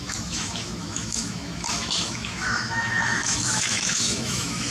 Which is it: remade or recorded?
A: remade